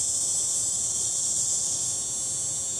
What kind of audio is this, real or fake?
real